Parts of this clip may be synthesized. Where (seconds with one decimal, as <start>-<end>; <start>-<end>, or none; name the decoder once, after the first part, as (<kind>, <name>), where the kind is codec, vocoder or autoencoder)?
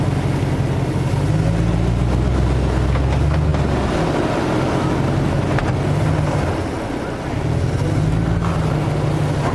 none